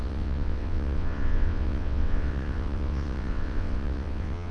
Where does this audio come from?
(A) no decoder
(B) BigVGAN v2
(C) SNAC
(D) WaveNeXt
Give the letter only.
D